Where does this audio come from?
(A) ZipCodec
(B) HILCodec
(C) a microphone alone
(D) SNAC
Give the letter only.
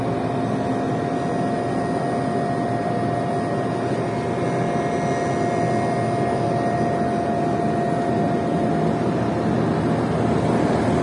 C